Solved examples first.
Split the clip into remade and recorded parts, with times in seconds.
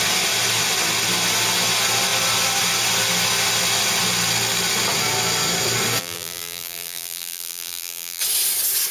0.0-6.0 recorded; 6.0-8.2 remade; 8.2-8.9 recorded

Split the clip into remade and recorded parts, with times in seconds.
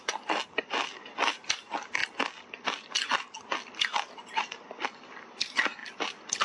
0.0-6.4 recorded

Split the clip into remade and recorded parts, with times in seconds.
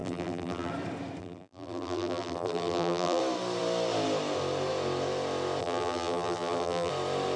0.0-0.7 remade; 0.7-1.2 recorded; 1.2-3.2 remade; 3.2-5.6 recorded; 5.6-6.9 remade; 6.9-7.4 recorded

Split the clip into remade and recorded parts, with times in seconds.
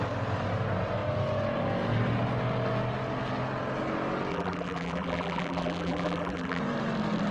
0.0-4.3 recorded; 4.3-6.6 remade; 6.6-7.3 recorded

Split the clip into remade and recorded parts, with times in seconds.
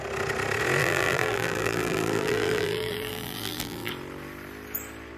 0.0-0.8 recorded; 0.8-3.9 remade; 3.9-5.2 recorded